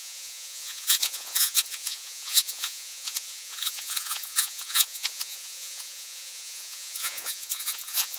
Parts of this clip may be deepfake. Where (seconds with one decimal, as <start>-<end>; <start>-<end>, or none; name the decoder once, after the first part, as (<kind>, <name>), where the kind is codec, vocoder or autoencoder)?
0.0-8.2 (vocoder, Vocos)